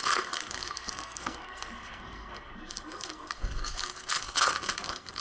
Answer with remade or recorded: remade